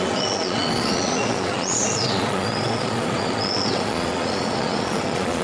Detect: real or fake fake